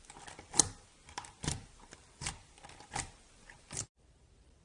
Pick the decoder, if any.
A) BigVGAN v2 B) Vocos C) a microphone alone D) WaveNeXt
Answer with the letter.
A